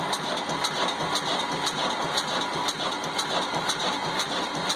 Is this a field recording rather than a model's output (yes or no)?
yes